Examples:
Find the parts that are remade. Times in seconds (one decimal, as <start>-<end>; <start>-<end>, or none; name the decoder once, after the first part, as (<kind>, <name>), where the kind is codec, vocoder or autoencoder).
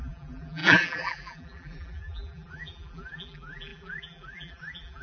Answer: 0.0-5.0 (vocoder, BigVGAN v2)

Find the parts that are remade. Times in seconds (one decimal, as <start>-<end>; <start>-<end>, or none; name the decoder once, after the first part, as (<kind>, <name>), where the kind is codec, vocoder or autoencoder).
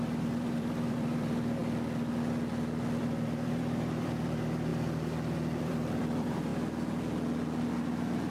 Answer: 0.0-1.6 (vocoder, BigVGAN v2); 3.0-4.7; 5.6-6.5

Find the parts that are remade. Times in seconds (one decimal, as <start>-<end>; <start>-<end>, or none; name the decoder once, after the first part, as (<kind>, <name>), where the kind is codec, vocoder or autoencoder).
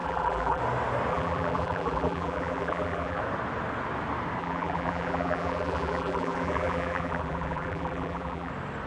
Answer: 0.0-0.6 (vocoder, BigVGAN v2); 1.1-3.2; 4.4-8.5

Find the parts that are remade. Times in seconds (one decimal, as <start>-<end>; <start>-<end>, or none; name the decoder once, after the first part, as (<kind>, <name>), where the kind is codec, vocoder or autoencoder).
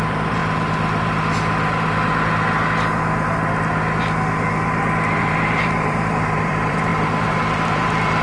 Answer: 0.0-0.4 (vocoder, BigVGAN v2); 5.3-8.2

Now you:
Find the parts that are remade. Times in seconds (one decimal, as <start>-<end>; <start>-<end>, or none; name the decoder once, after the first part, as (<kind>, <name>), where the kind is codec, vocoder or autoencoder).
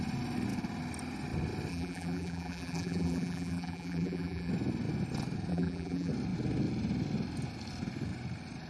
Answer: 1.7-4.5 (vocoder, BigVGAN v2); 5.5-6.1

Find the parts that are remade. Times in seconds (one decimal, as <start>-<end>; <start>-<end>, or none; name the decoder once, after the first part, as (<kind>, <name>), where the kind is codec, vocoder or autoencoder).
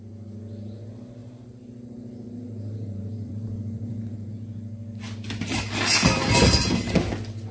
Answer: 1.2-4.3 (vocoder, BigVGAN v2)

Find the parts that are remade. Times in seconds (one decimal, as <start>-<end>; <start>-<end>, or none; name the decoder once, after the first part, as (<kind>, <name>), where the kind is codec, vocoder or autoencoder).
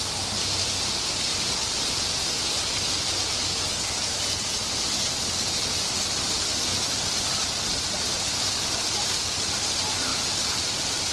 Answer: 10.1-10.7 (vocoder, BigVGAN v2)